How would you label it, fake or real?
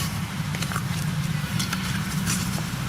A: fake